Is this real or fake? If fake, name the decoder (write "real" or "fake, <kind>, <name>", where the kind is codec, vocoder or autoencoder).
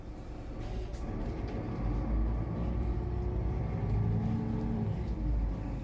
real